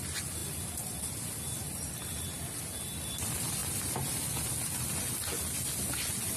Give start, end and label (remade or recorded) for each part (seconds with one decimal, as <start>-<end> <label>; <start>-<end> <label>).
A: 0.0-6.4 remade